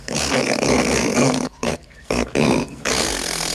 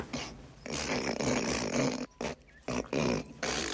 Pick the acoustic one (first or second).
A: second